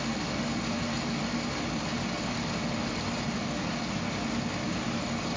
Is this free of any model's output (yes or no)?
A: yes